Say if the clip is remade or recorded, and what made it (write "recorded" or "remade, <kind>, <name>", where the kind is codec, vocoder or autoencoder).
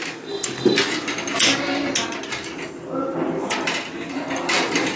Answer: recorded